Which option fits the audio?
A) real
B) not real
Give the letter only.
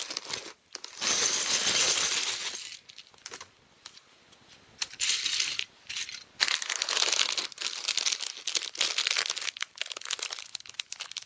A